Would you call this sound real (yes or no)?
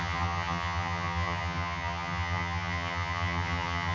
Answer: no